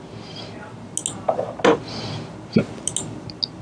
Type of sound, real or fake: real